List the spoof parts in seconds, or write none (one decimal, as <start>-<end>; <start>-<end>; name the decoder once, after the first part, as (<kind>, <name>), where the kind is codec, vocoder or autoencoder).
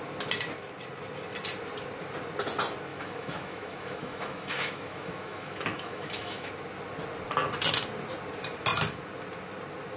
2.9-6.5 (autoencoder, DAC-VAE)